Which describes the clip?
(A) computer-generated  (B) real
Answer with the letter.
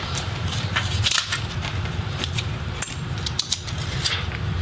A